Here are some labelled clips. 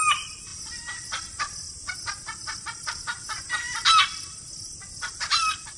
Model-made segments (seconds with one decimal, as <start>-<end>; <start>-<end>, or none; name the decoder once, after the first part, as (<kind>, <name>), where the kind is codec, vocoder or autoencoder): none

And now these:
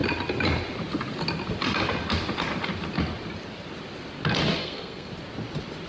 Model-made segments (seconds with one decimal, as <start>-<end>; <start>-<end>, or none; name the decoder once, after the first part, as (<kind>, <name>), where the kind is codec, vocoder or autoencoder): 4.6-5.1 (codec, SNAC)

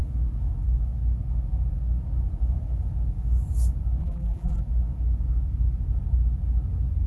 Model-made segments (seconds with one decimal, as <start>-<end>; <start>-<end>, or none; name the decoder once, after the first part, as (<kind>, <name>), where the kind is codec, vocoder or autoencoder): 4.0-4.6 (vocoder, BigVGAN v2)

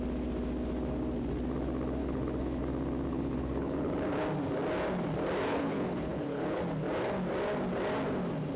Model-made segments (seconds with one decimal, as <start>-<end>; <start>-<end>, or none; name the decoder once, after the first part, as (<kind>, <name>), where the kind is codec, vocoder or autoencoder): 2.0-2.6 (codec, HILCodec); 3.1-3.9; 5.5-6.6

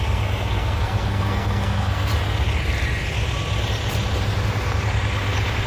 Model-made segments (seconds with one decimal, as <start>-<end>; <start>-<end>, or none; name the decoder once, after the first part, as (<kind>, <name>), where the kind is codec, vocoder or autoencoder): 0.0-2.1 (codec, SNAC)

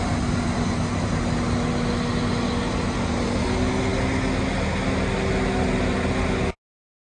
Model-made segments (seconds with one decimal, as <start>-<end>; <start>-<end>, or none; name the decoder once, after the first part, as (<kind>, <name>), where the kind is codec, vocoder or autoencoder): none

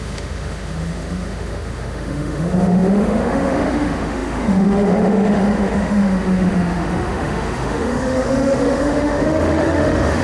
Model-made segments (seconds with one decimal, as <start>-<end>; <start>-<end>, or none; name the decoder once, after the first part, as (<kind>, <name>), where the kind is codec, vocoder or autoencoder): 0.0-10.2 (autoencoder, DAC-VAE)

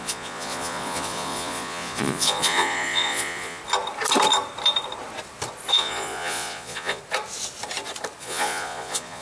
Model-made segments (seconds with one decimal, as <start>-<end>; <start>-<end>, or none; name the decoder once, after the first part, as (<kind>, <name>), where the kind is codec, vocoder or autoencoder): 0.0-3.6 (vocoder, Vocos); 5.7-7.0; 8.2-9.2